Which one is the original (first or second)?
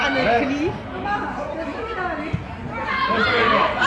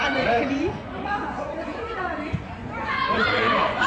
first